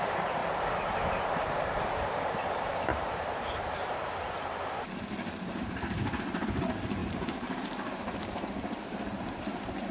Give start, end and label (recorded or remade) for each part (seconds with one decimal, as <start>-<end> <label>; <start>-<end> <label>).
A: 0.0-0.4 remade; 0.4-1.1 recorded; 1.1-9.9 remade